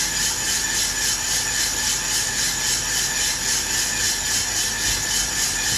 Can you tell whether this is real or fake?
real